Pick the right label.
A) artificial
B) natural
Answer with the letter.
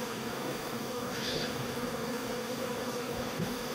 A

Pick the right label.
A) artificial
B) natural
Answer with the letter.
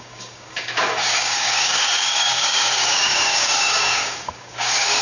A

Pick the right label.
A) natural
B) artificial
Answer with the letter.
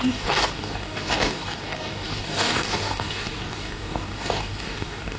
B